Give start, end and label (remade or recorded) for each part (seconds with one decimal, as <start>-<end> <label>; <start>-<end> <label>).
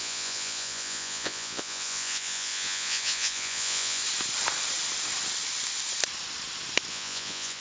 0.0-4.0 remade; 4.0-6.9 recorded; 6.9-7.6 remade